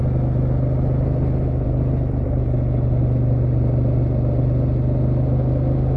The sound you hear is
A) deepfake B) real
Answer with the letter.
B